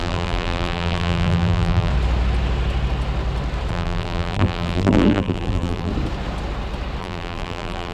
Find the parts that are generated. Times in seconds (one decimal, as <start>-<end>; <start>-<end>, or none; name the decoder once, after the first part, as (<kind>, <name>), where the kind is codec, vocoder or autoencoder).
0.0-1.9 (vocoder, BigVGAN v2); 3.7-5.9; 7.0-7.9